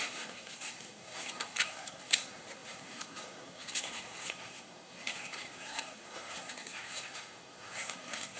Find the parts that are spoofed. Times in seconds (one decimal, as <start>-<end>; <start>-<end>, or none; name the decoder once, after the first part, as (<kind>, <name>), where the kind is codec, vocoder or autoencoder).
0.0-8.4 (codec, SNAC)